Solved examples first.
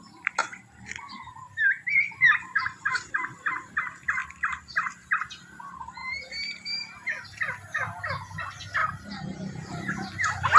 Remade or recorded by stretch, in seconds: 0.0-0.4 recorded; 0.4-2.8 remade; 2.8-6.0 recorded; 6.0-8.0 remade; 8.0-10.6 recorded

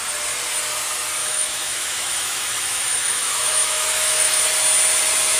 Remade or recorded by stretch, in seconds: 0.0-1.2 recorded; 1.2-4.4 remade; 4.4-5.4 recorded

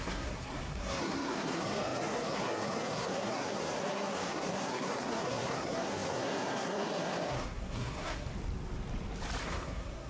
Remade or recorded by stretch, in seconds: 0.0-8.3 remade; 8.3-9.4 recorded; 9.4-10.1 remade

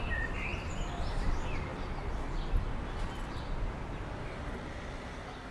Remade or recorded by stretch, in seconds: 0.0-1.7 remade; 1.7-5.0 recorded; 5.0-5.5 remade

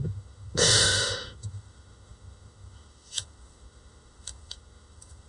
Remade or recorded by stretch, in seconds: 0.0-5.3 remade

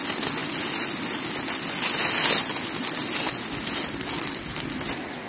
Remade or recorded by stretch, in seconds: 0.0-5.3 recorded

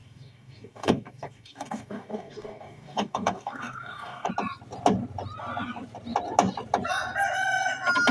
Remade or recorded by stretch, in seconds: 0.0-4.3 remade; 4.3-8.1 recorded

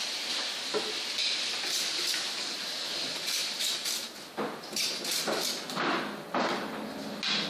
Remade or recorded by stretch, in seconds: 0.0-7.5 recorded